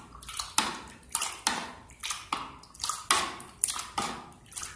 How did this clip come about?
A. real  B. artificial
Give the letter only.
A